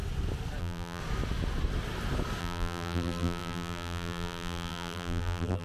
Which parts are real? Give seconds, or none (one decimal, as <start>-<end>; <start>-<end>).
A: 0.0-0.6; 1.0-2.4